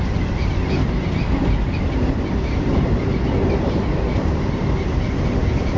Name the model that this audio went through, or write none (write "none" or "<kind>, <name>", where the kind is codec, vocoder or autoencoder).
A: none